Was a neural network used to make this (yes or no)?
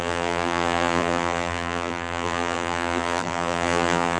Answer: yes